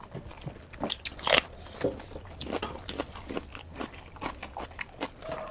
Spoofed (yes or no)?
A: no